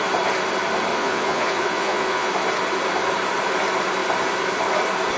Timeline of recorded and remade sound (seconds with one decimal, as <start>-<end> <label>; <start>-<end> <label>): 0.0-0.9 recorded; 0.9-2.3 remade; 2.3-5.2 recorded